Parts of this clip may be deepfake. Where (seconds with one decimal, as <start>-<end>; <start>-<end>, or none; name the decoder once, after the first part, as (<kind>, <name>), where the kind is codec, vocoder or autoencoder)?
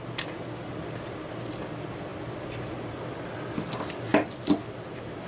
none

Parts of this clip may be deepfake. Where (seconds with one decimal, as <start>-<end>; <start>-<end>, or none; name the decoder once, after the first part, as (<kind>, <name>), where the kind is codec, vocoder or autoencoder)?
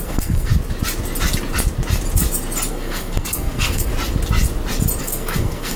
0.0-0.5 (codec, SNAC); 2.7-3.9; 5.0-5.8